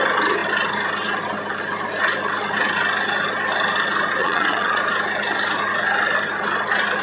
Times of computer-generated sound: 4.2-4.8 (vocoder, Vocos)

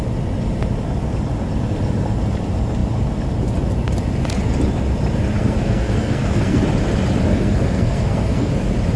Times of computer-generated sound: 5.4-6.6 (codec, SNAC); 7.3-8.5

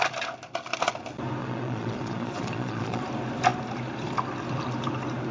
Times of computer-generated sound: 1.4-3.0 (vocoder, Vocos)

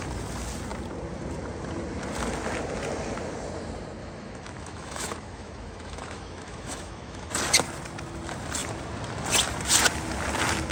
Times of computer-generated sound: 4.0-7.3 (autoencoder, DAC-VAE)

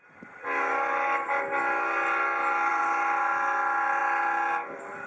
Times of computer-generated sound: 2.7-3.3 (vocoder, BigVGAN v2)

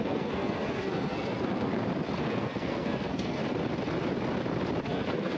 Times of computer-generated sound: 0.0-1.7 (codec, SNAC); 2.3-3.4; 4.8-5.4

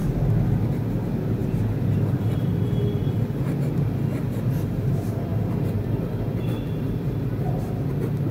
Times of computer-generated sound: none

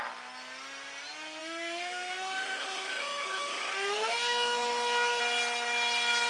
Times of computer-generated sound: 1.4-5.2 (autoencoder, DAC-VAE)